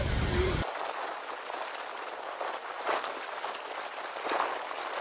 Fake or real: real